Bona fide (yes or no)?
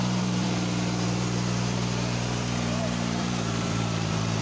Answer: no